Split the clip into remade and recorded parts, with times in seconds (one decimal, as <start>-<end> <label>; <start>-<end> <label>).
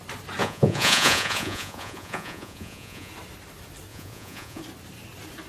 0.0-0.4 recorded; 0.4-3.1 remade; 3.1-3.9 recorded; 3.9-4.6 remade; 4.6-5.5 recorded